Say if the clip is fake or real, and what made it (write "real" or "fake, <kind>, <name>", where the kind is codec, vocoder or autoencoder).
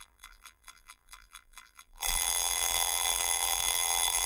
fake, vocoder, BigVGAN v2